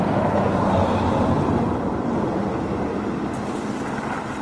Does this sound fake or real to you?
real